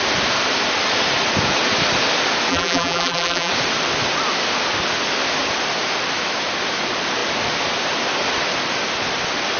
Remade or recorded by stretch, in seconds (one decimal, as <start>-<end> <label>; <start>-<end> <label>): 0.0-2.5 recorded; 2.5-3.5 remade; 3.5-9.6 recorded